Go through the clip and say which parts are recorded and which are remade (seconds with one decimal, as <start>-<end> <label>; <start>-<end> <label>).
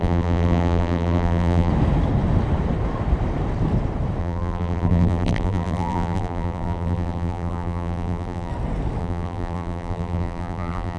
0.0-1.7 remade; 1.7-4.2 recorded; 4.2-8.5 remade; 8.5-9.0 recorded; 9.0-11.0 remade